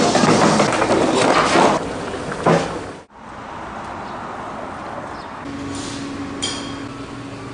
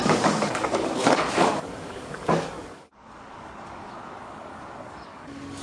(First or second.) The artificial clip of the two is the second